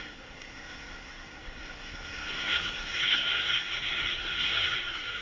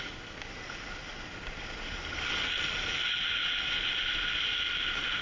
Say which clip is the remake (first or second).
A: first